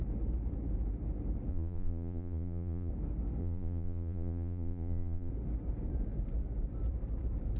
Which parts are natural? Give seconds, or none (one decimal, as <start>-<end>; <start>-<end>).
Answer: 0.0-1.5; 2.9-3.4; 5.3-7.6